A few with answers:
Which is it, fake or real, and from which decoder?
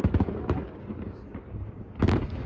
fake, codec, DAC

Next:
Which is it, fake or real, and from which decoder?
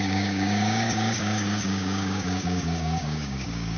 fake, codec, DAC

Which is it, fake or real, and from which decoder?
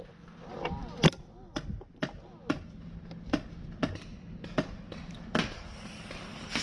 real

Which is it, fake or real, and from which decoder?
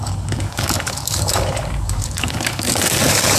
fake, codec, DAC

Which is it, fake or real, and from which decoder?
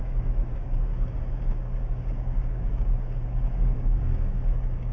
fake, codec, DAC